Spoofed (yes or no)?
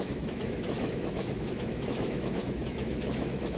yes